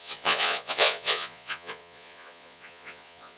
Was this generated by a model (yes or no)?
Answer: yes